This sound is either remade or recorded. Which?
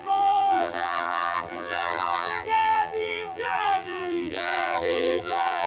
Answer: remade